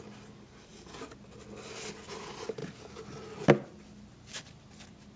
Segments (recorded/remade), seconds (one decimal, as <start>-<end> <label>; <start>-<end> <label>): 0.0-5.2 recorded